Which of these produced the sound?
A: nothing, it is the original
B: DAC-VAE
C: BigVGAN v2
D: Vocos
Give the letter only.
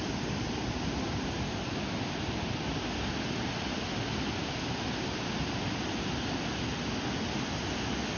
A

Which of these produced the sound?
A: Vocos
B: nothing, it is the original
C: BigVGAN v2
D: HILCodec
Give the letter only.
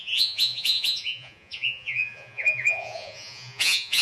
A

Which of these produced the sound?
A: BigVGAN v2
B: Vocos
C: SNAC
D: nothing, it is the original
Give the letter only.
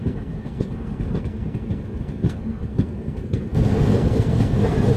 C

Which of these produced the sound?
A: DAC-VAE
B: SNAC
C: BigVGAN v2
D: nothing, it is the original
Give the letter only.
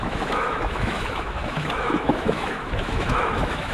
A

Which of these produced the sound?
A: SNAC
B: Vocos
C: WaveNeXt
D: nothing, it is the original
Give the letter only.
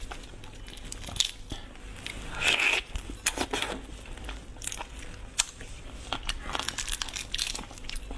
D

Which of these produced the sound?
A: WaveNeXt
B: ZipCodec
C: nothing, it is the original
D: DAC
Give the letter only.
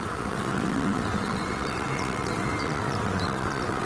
A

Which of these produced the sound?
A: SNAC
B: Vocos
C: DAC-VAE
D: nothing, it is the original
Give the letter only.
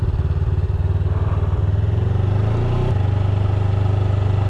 D